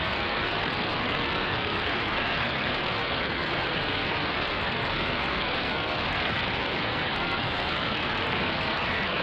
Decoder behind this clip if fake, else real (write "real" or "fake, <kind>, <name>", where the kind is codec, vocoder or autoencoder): fake, codec, SNAC